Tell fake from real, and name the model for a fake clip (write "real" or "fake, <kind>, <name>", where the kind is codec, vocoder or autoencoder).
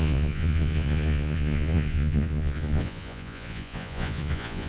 fake, vocoder, Vocos